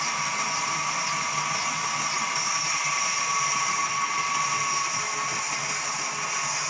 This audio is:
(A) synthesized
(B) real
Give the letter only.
B